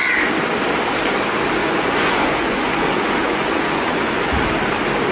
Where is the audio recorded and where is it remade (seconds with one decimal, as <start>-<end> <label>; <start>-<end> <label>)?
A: 0.0-1.6 recorded; 1.6-4.5 remade; 4.5-5.1 recorded